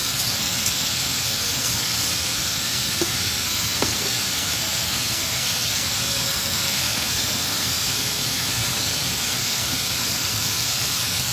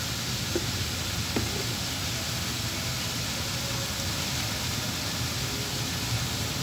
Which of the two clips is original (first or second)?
second